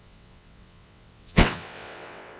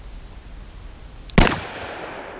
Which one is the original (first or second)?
second